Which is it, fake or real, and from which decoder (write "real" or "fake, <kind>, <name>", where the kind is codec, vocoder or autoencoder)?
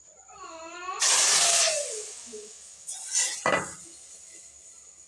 real